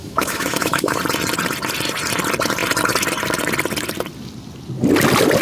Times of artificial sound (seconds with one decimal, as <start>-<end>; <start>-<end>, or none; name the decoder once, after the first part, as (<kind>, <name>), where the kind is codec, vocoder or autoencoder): 0.0-1.0 (autoencoder, DAC-VAE)